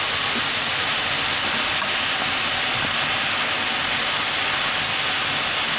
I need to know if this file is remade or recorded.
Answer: recorded